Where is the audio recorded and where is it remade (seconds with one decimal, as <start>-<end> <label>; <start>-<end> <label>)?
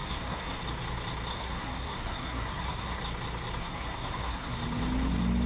0.0-0.6 remade; 0.6-1.3 recorded; 1.3-3.0 remade; 3.0-3.6 recorded; 3.6-4.6 remade; 4.6-5.5 recorded